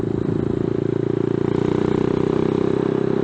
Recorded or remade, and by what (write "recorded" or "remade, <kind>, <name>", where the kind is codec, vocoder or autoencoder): recorded